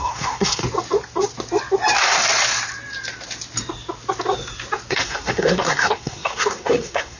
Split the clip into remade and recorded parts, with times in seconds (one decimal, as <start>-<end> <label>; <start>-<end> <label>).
0.0-0.6 remade; 0.6-4.9 recorded; 4.9-7.2 remade